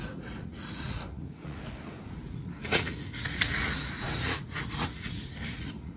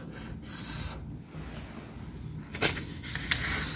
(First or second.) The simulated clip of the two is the first